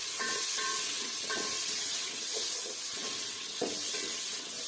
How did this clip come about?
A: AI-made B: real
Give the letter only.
A